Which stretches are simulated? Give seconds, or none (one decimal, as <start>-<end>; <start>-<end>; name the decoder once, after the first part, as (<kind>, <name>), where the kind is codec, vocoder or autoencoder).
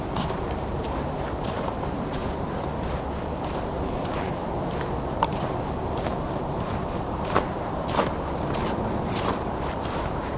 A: 0.0-2.2 (vocoder, BigVGAN v2); 3.2-4.4; 5.2-10.4